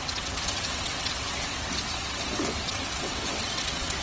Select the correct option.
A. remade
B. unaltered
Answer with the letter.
A